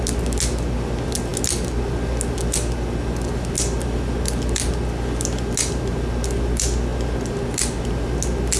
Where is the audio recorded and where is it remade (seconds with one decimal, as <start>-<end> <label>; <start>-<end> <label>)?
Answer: 0.0-8.6 recorded